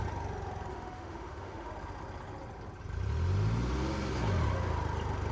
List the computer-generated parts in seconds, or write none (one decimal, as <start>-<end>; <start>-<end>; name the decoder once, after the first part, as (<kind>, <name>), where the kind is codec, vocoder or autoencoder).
0.7-1.7 (autoencoder, DAC-VAE)